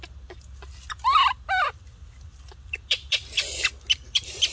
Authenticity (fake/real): real